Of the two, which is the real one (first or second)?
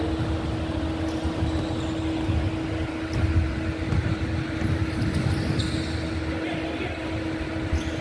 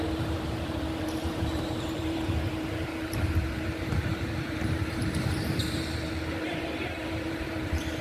first